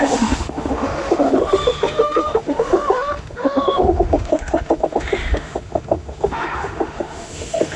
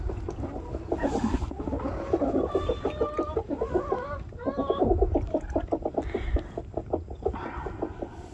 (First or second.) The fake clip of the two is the first